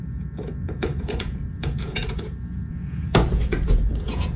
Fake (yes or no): yes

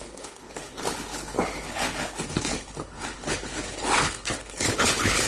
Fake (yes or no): yes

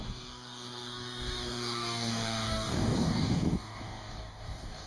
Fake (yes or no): yes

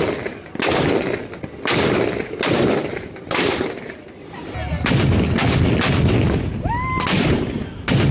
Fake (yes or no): no